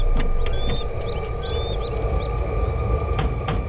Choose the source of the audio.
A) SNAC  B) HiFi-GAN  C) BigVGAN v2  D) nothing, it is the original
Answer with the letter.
D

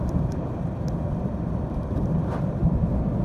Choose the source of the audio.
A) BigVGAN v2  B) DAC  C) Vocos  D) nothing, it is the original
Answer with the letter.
A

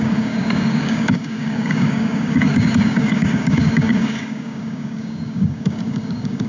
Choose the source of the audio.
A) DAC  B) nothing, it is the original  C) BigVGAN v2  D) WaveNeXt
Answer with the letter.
A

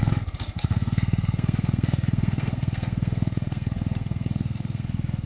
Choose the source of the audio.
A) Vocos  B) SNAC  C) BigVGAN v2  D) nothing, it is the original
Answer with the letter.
B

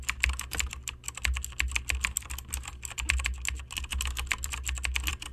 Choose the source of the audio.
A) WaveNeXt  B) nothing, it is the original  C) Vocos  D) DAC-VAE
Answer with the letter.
B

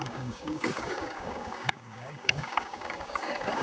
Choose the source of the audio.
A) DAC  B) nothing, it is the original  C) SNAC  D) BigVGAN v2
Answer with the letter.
A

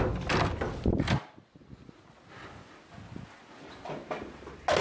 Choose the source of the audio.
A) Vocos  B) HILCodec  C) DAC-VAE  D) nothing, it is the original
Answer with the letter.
D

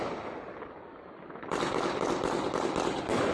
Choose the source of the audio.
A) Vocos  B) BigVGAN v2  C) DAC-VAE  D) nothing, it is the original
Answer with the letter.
D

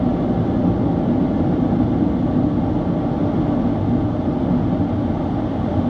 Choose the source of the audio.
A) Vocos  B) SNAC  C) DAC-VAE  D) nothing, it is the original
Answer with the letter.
D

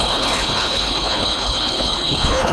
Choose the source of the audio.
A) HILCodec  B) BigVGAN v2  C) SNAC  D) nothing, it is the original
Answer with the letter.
A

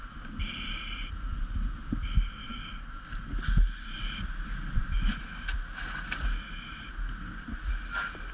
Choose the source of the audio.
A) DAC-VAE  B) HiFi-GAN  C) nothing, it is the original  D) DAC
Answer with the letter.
C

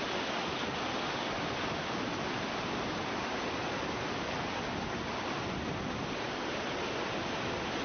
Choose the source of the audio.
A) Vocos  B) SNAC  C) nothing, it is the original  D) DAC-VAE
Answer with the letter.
C